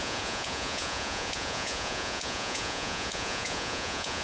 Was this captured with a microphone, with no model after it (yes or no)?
no